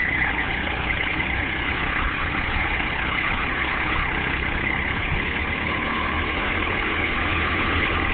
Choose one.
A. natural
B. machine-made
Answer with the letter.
B